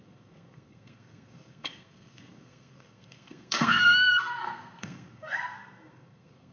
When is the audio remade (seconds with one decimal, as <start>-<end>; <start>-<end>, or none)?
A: 0.0-6.5